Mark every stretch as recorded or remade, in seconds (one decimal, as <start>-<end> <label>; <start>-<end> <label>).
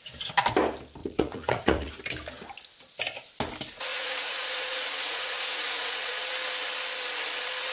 0.0-1.0 recorded; 1.0-1.9 remade; 1.9-3.9 recorded; 3.9-6.1 remade; 6.1-7.7 recorded